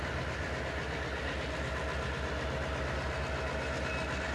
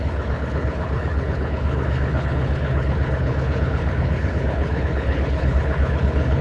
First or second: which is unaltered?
first